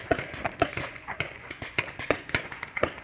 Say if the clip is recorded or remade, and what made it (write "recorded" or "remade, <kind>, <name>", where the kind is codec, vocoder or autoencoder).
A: remade, vocoder, Vocos